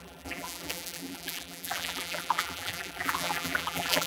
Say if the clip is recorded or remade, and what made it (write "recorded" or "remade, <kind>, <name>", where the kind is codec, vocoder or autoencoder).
remade, vocoder, BigVGAN v2